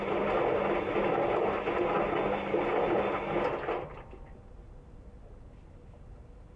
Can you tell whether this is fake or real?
real